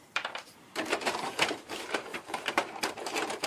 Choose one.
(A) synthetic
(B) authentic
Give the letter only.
A